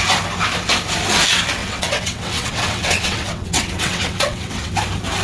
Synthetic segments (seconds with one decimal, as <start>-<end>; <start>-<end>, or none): 1.6-4.7